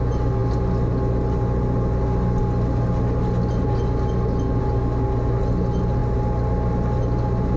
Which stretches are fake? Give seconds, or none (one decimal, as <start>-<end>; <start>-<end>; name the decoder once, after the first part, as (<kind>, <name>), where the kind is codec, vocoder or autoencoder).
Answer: none